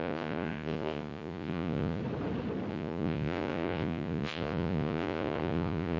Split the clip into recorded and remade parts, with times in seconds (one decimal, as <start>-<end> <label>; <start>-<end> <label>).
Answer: 0.0-2.0 remade; 2.0-2.7 recorded; 2.7-6.0 remade